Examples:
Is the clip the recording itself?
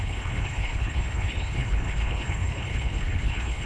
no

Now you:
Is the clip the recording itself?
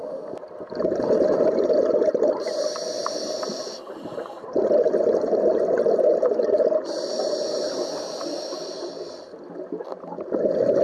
yes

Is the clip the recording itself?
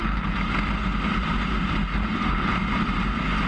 yes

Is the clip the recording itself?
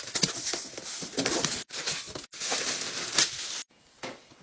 yes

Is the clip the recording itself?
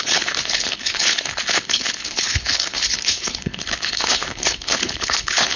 no